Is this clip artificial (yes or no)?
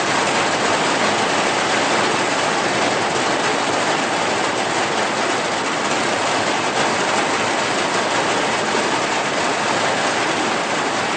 no